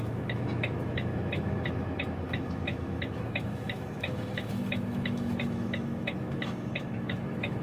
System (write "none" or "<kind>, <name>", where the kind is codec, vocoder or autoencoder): autoencoder, DAC-VAE